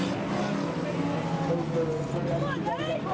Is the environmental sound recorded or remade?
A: recorded